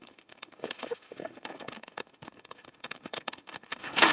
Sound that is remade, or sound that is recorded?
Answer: remade